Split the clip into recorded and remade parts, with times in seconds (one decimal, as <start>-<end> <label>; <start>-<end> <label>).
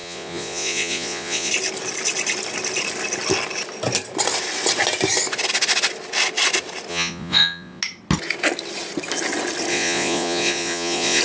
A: 0.0-1.5 remade; 1.5-6.9 recorded; 6.9-7.8 remade; 7.8-9.7 recorded; 9.7-11.2 remade